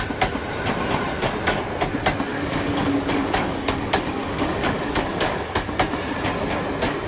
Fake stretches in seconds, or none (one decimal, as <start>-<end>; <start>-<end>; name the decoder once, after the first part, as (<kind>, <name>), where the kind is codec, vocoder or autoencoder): 2.3-5.7 (codec, DAC)